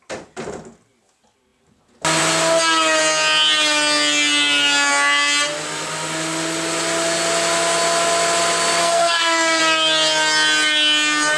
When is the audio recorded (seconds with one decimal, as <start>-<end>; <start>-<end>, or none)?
0.0-8.8; 9.6-11.4